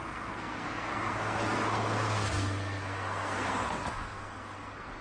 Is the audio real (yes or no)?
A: no